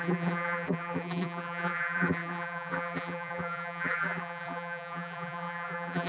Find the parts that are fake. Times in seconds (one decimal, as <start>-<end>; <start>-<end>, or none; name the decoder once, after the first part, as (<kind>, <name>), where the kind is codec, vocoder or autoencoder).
0.0-6.1 (vocoder, BigVGAN v2)

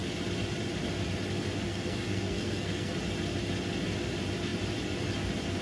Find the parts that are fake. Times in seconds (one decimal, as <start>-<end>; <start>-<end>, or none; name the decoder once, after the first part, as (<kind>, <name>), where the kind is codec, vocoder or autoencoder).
1.7-2.9 (codec, SNAC)

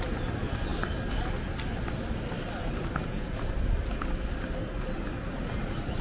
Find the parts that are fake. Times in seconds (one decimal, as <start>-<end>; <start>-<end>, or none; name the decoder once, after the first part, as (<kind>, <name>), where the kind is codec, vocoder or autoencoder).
3.0-3.5 (vocoder, Vocos)

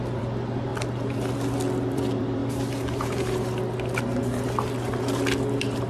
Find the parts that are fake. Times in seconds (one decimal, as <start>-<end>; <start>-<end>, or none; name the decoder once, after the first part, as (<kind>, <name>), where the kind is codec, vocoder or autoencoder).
0.0-0.7 (vocoder, BigVGAN v2); 1.5-2.4

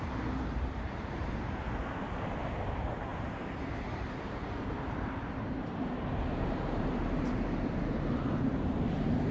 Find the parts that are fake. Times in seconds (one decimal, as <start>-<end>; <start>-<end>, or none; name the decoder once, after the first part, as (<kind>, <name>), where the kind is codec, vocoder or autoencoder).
0.0-9.3 (vocoder, BigVGAN v2)

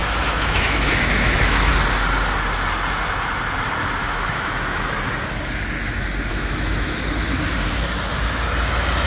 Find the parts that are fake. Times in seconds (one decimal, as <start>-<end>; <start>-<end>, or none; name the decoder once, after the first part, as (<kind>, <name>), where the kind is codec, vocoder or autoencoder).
0.0-1.7 (autoencoder, DAC-VAE); 4.0-4.5; 6.3-7.0

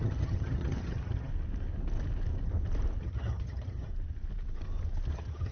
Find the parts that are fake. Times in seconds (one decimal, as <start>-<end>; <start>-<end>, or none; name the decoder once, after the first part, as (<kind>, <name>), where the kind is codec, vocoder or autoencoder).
0.0-1.3 (vocoder, HiFi-GAN); 3.0-3.9; 5.1-5.5